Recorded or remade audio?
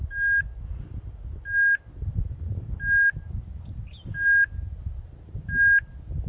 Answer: recorded